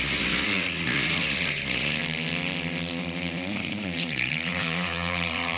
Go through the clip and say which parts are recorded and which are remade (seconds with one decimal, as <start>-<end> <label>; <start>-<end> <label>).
0.0-2.0 remade; 2.0-3.0 recorded; 3.0-5.6 remade